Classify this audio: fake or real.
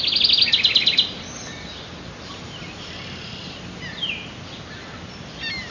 real